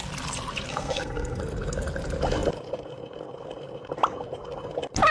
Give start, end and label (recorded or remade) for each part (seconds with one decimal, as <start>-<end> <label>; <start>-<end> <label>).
0.0-0.7 recorded; 0.7-1.4 remade; 1.4-5.1 recorded